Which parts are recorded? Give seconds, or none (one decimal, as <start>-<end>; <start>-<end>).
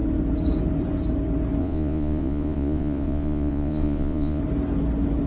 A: 0.0-1.6; 4.4-5.3